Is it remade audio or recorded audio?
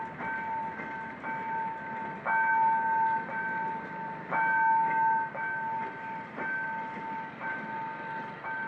recorded